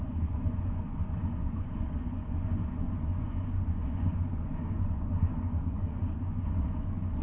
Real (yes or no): no